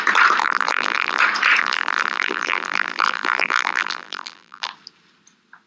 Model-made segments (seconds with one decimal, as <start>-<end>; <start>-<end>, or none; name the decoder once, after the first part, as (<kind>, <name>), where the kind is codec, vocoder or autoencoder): 0.4-1.2 (vocoder, BigVGAN v2); 1.6-4.7